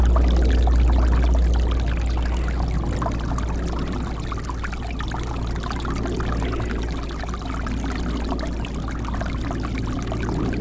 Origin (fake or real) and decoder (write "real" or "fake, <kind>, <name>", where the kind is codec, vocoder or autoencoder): real